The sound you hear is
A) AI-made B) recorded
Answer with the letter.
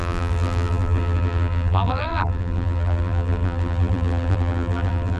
A